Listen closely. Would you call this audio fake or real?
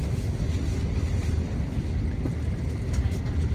real